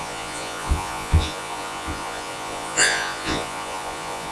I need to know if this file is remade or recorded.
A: remade